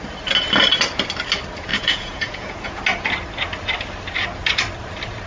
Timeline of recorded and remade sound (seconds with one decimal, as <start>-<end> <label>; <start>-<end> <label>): 0.0-1.7 recorded; 1.7-2.8 remade; 2.8-5.3 recorded